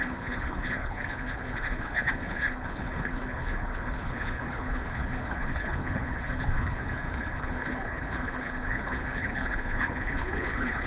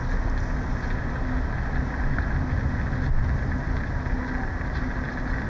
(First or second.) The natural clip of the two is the second